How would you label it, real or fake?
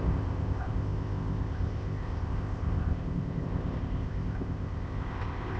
fake